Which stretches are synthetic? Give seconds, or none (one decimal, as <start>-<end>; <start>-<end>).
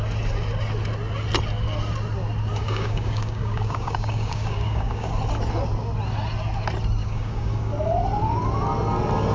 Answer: 2.6-5.1; 7.0-7.7